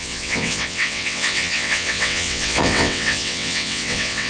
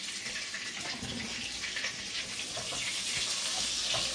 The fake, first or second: first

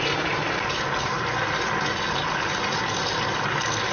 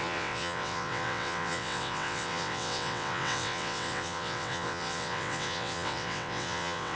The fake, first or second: second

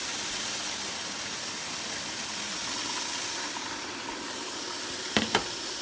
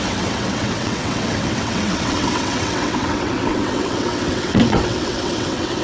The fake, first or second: second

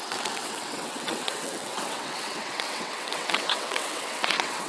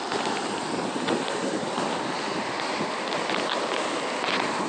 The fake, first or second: first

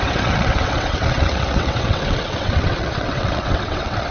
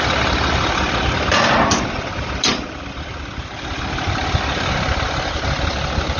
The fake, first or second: first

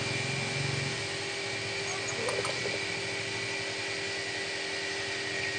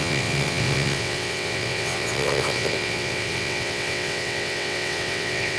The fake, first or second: second